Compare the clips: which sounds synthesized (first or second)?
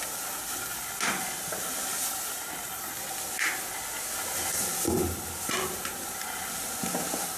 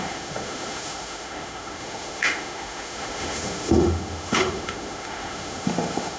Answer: second